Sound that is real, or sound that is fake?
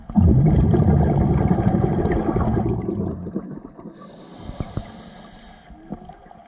real